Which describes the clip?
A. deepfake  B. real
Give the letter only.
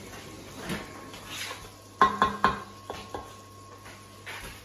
B